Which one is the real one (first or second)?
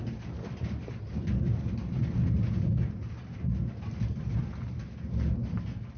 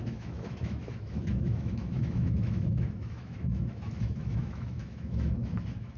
first